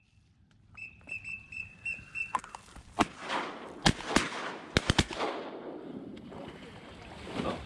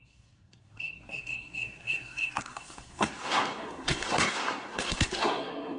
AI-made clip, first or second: second